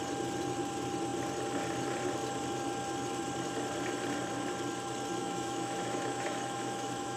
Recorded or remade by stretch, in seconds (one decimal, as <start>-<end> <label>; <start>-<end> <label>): 0.0-5.2 recorded; 5.2-7.2 remade